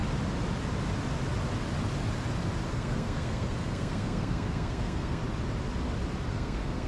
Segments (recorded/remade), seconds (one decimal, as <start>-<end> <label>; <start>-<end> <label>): 0.0-2.7 recorded; 2.7-5.2 remade; 5.2-6.3 recorded; 6.3-6.9 remade